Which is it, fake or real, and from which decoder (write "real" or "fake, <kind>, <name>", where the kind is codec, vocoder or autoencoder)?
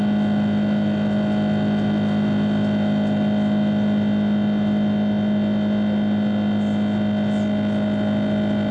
real